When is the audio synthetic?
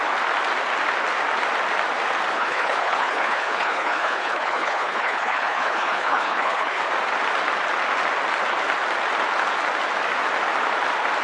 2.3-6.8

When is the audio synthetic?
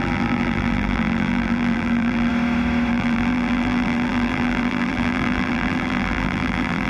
0.0-2.3; 2.9-6.9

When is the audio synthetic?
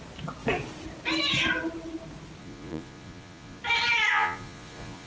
2.4-3.6; 4.1-5.1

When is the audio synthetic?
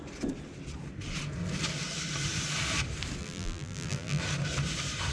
3.2-4.2